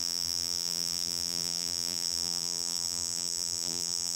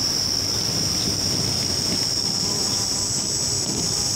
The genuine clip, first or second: second